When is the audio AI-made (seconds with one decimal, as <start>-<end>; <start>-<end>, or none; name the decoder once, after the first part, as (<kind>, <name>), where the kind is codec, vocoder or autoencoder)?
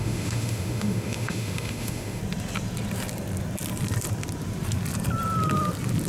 0.0-2.2 (autoencoder, DAC-VAE)